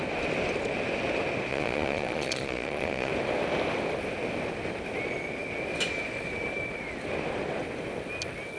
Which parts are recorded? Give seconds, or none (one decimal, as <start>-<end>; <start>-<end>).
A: 0.0-1.5; 3.1-8.6

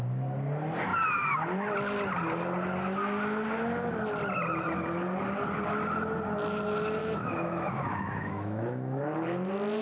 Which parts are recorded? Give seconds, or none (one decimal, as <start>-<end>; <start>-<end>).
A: 0.0-7.0; 9.0-9.8

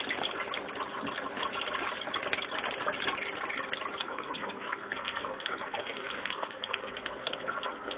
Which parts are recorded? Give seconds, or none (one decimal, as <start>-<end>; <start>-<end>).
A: 0.0-4.0

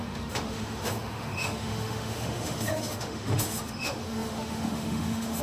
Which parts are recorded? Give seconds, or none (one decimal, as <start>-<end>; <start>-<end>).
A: none

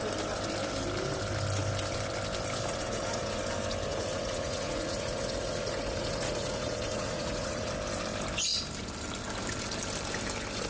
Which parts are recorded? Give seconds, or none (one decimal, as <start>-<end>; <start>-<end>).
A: 0.0-2.7; 3.4-3.9; 7.7-10.7

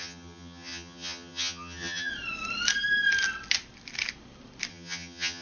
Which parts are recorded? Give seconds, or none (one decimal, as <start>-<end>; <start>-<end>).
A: 2.1-4.7